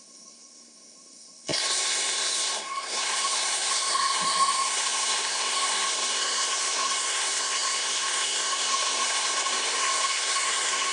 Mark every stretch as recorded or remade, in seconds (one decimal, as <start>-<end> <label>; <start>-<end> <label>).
0.0-10.9 remade